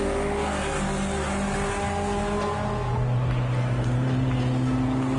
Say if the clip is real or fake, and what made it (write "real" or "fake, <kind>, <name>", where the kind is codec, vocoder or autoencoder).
real